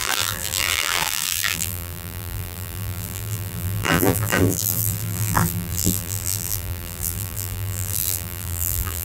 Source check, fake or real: fake